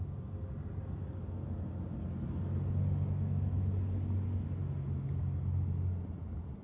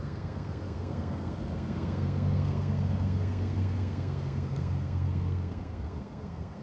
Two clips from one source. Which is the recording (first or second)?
first